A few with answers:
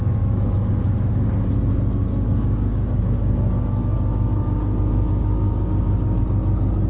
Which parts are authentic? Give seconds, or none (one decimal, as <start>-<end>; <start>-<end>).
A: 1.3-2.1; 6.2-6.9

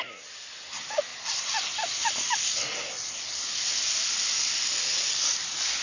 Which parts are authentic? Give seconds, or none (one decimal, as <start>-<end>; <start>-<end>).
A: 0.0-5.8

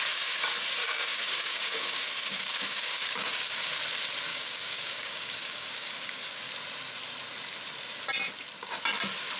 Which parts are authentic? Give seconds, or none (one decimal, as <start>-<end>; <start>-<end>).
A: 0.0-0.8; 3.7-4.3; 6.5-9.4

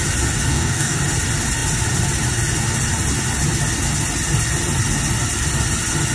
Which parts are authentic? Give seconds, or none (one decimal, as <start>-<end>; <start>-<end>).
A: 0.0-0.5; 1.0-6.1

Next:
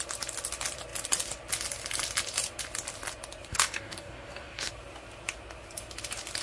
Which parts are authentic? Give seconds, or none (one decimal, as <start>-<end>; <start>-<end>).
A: 0.0-3.5; 4.7-6.4

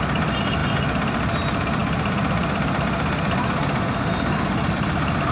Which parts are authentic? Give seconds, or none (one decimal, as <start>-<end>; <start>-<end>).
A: 0.0-5.3